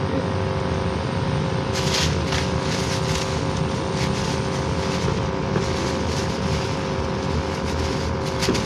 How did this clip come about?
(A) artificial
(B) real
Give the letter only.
B